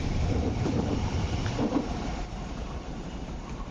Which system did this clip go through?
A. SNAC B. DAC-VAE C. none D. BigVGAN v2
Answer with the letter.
D